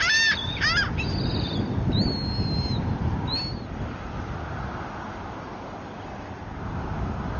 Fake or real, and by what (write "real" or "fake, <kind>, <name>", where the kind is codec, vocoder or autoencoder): real